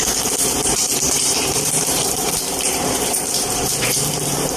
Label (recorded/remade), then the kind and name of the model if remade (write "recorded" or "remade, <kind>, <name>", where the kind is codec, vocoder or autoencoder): remade, vocoder, BigVGAN v2